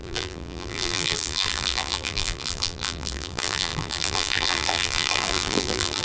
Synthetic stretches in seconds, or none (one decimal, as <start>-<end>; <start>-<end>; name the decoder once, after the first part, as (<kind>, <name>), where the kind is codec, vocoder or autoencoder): 0.0-6.0 (vocoder, BigVGAN v2)

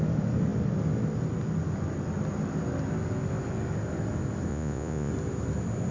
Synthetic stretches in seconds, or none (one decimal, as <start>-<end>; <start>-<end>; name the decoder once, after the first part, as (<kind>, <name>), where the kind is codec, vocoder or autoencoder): 4.5-5.1 (vocoder, Vocos)

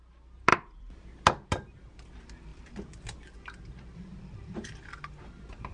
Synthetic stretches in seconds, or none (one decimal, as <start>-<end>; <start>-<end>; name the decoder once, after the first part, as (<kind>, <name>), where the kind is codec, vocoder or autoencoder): 0.5-1.2 (vocoder, BigVGAN v2); 2.5-4.8

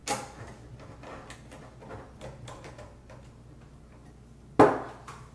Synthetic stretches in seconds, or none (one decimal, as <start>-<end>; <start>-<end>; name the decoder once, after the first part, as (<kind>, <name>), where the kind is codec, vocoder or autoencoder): none

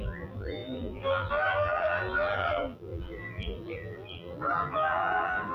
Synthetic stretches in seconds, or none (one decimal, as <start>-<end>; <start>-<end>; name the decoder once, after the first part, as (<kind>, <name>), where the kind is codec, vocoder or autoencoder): 0.0-5.5 (vocoder, BigVGAN v2)

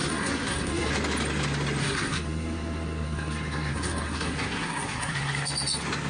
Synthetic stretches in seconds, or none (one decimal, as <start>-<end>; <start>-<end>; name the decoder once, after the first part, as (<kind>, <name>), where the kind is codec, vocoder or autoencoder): 0.0-0.9 (codec, SNAC); 1.8-5.5

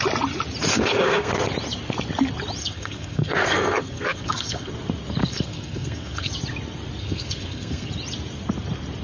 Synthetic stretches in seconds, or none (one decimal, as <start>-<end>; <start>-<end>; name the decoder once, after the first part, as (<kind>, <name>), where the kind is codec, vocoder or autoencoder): 0.7-1.3 (codec, SNAC); 2.6-4.7; 5.2-6.3; 7.0-7.9

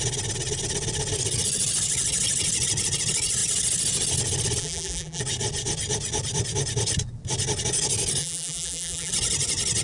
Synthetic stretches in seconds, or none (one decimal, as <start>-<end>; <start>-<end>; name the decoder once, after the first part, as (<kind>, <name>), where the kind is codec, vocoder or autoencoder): 4.6-5.2 (vocoder, BigVGAN v2); 8.2-9.1